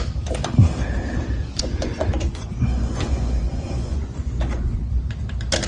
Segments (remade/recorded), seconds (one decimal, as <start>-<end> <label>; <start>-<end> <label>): 0.0-1.4 recorded; 1.4-4.7 remade; 4.7-5.7 recorded